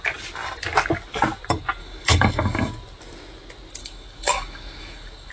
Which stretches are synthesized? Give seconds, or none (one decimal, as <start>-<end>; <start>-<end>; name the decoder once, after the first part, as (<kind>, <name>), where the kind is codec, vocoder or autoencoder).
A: 1.8-2.7 (codec, DAC); 3.8-5.3